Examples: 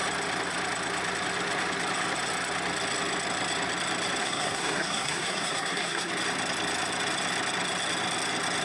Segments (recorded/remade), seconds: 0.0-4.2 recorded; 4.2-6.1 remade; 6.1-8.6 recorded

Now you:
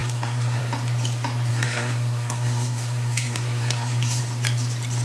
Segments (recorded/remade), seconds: 0.0-0.6 remade; 0.6-1.5 recorded; 1.5-4.2 remade; 4.2-5.0 recorded

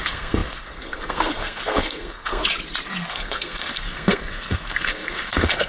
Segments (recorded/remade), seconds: 0.0-2.4 remade; 2.4-3.1 recorded; 3.1-5.7 remade

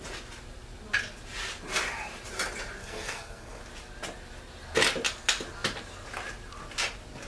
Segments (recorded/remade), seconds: 0.0-2.8 recorded; 2.8-3.6 remade; 3.6-7.3 recorded